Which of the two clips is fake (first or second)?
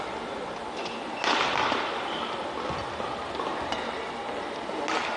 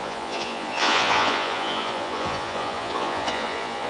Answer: second